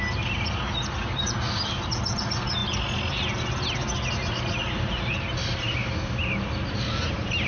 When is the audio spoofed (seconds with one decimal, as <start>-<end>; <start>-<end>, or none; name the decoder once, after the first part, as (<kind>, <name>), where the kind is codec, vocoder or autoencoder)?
none